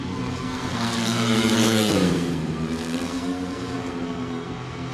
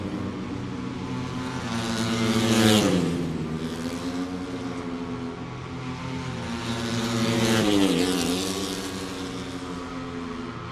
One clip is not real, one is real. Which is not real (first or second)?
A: first